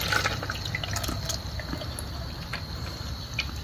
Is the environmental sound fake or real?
real